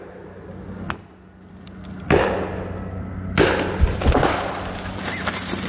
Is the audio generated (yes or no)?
no